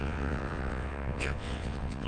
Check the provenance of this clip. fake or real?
fake